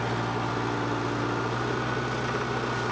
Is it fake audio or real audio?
real